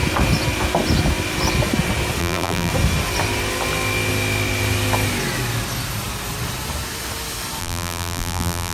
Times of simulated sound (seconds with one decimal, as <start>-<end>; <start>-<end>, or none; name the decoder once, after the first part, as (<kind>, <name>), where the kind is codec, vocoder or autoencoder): 2.2-2.7 (vocoder, BigVGAN v2); 7.6-8.7